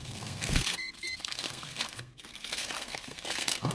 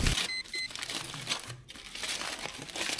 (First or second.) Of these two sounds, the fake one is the first